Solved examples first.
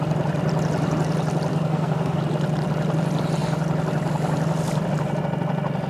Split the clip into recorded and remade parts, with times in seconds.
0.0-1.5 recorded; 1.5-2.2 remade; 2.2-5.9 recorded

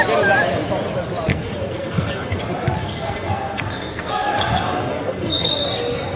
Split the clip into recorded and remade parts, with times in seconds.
0.0-1.3 recorded; 1.3-2.4 remade; 2.4-2.8 recorded; 2.8-5.5 remade; 5.5-6.2 recorded

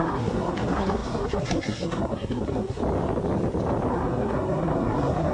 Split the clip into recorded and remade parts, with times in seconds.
0.0-2.8 remade; 2.8-3.9 recorded; 3.9-5.3 remade

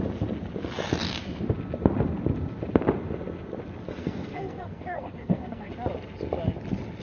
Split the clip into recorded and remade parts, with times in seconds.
0.0-4.0 recorded; 4.0-5.7 remade; 5.7-7.0 recorded

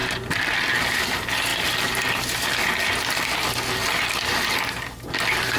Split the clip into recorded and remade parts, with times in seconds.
0.0-5.6 recorded

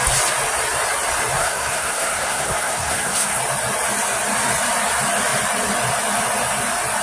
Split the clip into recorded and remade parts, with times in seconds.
0.0-1.4 recorded; 1.4-3.4 remade; 3.4-7.0 recorded

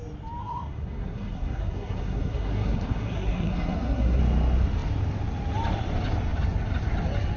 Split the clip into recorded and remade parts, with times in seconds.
0.0-0.4 recorded; 0.4-4.2 remade; 4.2-7.4 recorded